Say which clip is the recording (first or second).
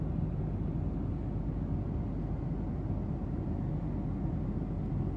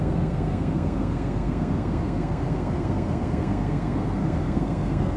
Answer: first